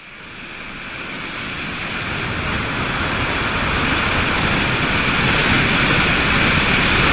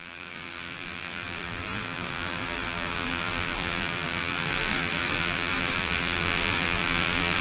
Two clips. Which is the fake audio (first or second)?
second